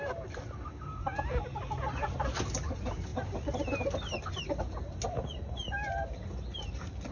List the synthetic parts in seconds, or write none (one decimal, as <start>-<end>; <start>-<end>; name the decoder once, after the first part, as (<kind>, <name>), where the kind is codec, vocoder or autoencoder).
none